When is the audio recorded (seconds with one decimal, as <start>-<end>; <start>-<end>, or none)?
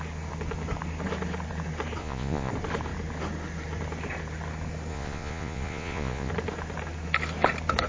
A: 0.0-2.0; 2.5-4.9; 6.3-7.9